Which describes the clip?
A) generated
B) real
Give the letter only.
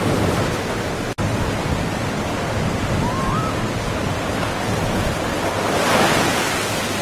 B